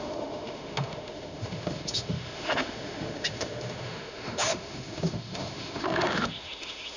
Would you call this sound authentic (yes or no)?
no